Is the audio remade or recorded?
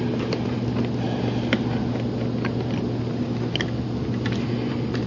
recorded